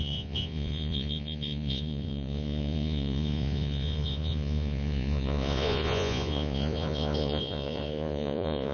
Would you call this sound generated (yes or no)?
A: yes